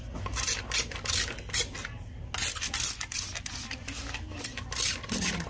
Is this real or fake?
real